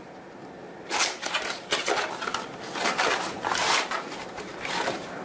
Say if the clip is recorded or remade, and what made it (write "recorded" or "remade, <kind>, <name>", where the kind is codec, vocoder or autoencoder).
recorded